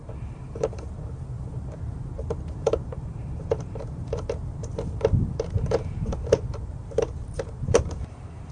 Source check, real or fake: fake